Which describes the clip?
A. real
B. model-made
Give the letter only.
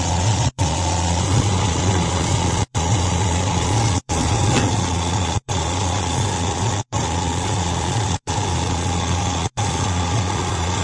B